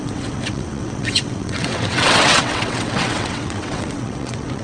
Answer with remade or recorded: remade